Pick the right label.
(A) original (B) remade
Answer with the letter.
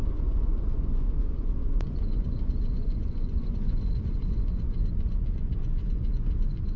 B